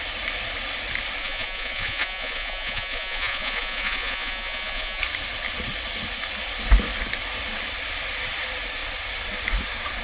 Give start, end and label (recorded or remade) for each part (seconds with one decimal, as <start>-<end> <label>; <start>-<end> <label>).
0.0-1.2 recorded; 1.2-5.0 remade; 5.0-10.0 recorded